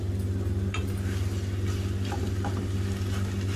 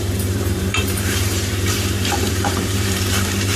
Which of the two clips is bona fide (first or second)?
first